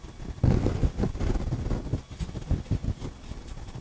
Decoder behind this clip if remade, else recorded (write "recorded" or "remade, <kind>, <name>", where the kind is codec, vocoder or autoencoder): recorded